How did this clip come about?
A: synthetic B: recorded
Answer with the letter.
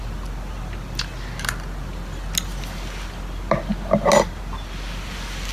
B